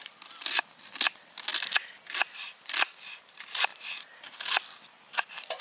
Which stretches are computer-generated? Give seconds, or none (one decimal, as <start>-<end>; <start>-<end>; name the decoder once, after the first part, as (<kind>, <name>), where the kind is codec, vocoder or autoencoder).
none